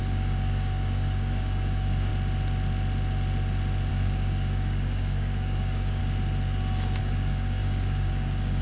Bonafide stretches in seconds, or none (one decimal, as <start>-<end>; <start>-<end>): 2.1-3.9; 6.0-7.0